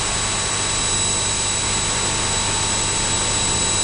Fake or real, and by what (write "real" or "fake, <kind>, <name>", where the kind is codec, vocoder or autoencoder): real